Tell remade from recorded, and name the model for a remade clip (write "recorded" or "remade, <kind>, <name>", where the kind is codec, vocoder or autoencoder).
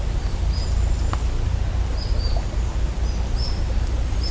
recorded